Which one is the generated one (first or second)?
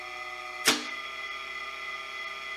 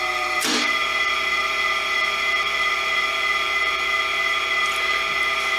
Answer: second